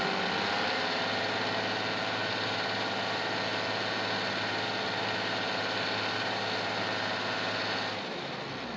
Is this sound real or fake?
real